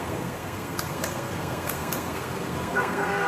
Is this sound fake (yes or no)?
yes